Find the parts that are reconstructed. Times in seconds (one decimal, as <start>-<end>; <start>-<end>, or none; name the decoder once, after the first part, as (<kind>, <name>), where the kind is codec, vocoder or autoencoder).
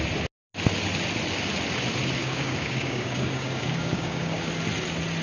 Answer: 2.2-4.5 (codec, DAC)